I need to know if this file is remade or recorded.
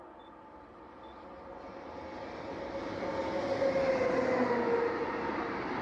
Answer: recorded